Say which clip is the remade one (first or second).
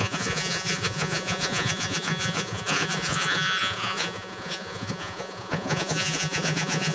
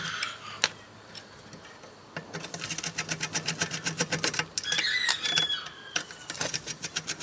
first